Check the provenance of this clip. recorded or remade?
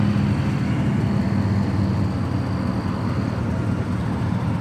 recorded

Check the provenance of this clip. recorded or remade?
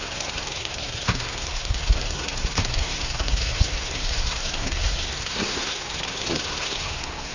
remade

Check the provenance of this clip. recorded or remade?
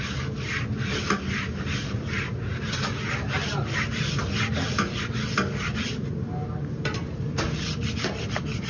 recorded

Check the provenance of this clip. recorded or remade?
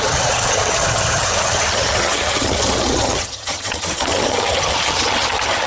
remade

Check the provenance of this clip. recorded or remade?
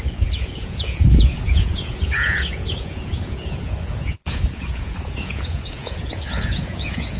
remade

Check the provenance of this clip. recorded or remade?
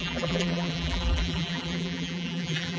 remade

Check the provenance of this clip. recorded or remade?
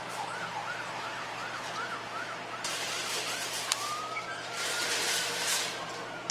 remade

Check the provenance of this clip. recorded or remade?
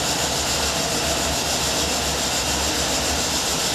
recorded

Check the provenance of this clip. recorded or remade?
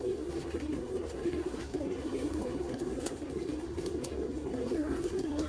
remade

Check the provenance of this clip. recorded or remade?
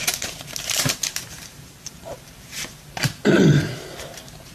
remade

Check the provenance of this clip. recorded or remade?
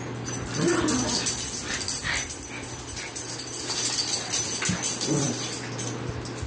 recorded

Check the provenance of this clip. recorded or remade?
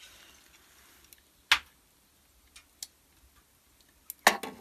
recorded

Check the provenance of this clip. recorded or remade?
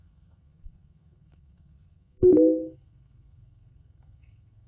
remade